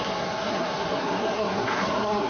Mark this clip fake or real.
fake